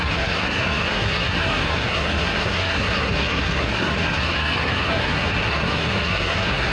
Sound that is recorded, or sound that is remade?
remade